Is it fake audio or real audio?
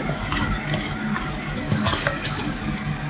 fake